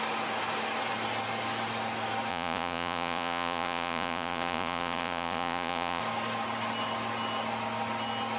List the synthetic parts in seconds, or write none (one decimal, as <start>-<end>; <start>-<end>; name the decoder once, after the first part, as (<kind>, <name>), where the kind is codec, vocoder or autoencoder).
2.3-6.0 (vocoder, Vocos)